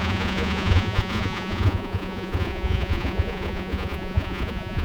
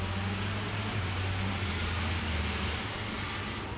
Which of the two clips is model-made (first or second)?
first